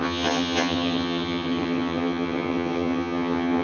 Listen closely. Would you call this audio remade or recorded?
remade